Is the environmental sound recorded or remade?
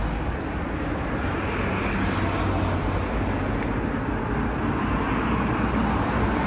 recorded